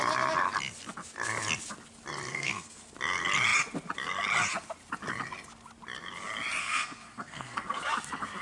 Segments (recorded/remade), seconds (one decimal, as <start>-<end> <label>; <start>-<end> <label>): 0.0-2.3 recorded; 2.3-2.8 remade; 2.8-6.6 recorded; 6.6-7.8 remade; 7.8-8.4 recorded